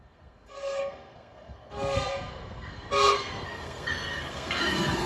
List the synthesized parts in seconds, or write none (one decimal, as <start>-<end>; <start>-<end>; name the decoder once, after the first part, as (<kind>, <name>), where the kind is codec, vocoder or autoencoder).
0.0-5.1 (codec, SNAC)